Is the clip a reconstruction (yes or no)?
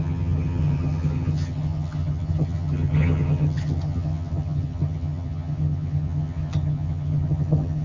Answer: yes